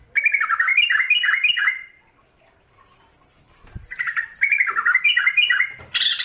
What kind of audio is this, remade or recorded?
remade